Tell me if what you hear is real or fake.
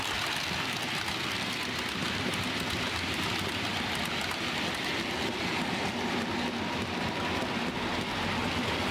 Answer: real